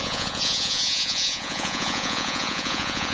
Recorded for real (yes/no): no